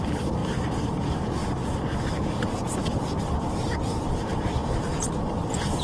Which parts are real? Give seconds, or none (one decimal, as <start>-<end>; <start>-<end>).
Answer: 0.4-0.9; 1.4-3.9